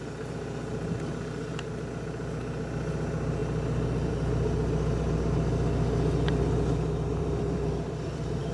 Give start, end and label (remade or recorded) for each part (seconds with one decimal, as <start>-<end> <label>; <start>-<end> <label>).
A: 0.0-7.1 recorded; 7.1-8.5 remade